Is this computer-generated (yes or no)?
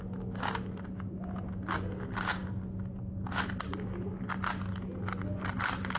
no